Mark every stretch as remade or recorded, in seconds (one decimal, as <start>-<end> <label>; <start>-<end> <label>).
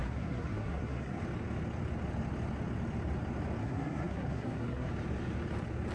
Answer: 0.0-1.2 remade; 1.2-3.6 recorded; 3.6-4.9 remade; 4.9-5.9 recorded